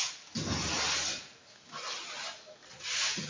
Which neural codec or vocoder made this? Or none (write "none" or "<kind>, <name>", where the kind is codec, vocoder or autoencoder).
none